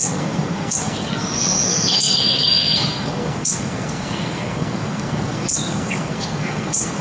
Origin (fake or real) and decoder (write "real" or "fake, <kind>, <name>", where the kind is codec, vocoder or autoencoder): fake, codec, SNAC